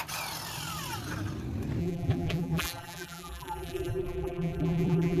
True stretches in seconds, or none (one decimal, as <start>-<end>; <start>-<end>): 0.0-1.8